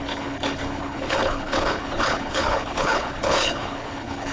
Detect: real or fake fake